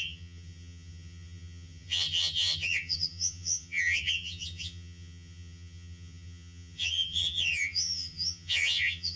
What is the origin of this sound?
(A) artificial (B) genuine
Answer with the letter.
A